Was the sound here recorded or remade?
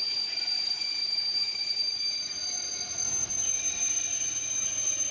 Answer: remade